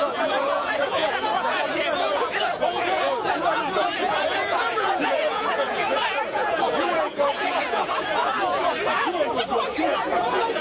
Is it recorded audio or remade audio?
remade